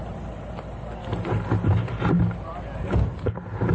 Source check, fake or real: real